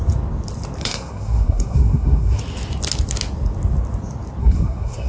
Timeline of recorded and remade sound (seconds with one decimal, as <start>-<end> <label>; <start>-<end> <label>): 0.0-0.8 recorded; 0.8-2.4 remade; 2.4-4.4 recorded; 4.4-5.1 remade